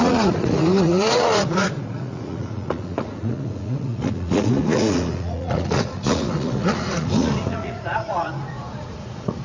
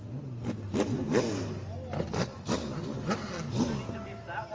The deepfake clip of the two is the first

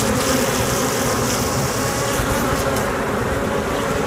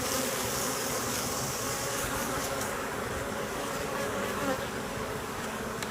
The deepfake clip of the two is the second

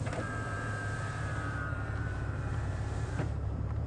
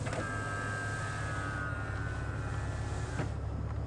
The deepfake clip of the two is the first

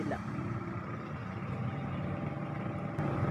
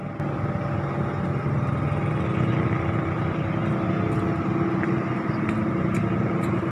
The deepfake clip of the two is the first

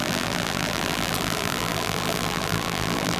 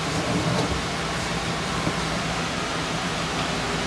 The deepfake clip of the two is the first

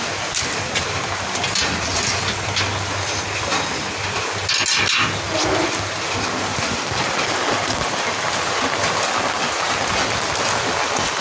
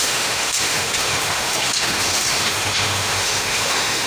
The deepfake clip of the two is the second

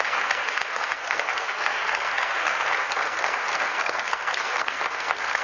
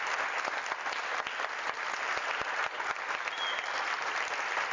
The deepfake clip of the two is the first